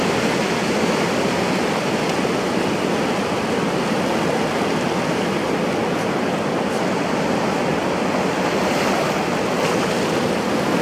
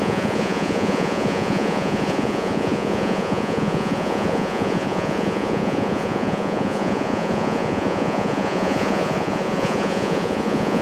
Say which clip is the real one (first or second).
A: first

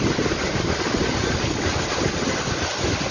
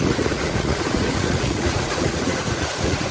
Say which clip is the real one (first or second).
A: first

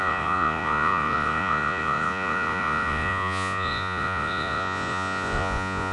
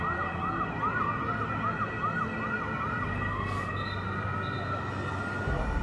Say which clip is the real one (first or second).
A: second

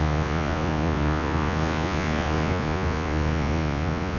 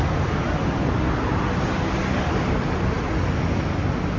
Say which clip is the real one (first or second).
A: second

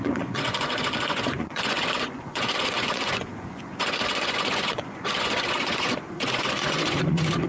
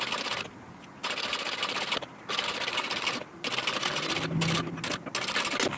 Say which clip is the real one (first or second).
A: second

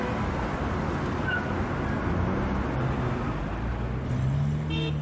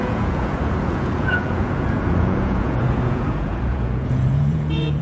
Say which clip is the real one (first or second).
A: first